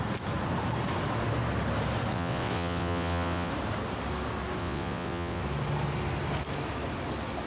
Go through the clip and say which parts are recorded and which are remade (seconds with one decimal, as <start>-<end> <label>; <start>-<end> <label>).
0.0-2.1 recorded; 2.1-3.5 remade; 3.5-4.6 recorded; 4.6-5.4 remade; 5.4-7.5 recorded